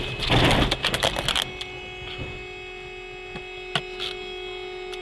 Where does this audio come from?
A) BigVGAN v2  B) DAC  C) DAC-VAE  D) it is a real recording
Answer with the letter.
D